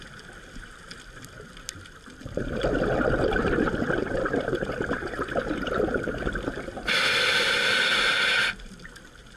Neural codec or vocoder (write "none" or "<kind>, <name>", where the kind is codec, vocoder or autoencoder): none